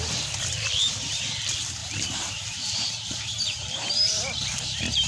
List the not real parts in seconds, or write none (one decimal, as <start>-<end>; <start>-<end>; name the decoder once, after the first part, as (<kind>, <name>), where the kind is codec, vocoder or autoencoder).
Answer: 1.8-5.1 (vocoder, BigVGAN v2)